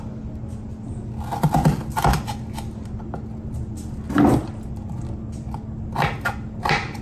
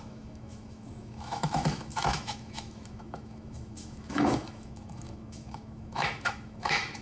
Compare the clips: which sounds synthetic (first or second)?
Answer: second